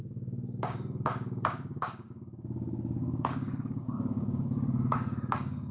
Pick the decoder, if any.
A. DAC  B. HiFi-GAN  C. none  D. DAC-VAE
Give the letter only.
A